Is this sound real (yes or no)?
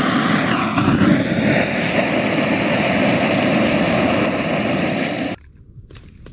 yes